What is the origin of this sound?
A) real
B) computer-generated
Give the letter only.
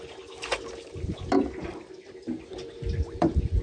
A